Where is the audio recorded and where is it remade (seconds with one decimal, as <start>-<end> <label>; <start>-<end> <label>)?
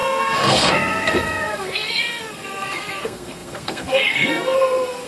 0.0-5.1 remade